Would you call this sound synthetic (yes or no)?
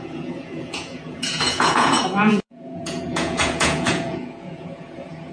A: yes